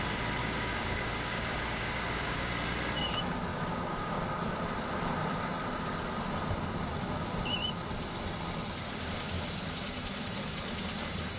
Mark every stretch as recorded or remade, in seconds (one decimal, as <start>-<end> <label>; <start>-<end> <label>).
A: 0.0-0.4 recorded; 0.4-2.5 remade; 2.5-3.5 recorded; 3.5-4.2 remade; 4.2-11.4 recorded